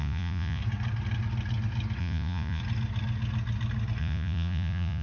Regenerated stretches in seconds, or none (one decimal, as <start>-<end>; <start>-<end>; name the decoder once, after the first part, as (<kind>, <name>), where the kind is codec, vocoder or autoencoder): 0.0-0.6 (vocoder, Vocos); 2.0-2.6; 4.0-5.0